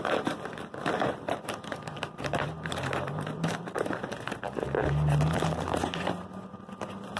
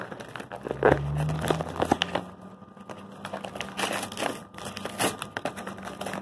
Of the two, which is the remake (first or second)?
first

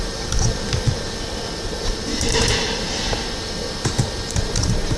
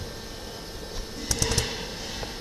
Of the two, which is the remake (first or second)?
first